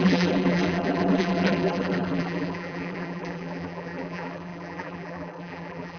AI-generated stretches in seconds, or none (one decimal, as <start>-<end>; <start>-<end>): 0.0-6.0